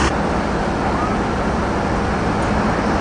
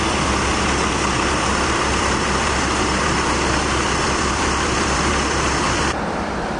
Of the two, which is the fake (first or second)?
second